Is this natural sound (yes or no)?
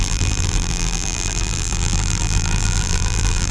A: no